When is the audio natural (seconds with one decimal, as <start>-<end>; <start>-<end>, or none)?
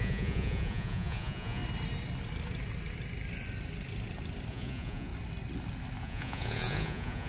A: 1.6-4.5; 5.1-6.0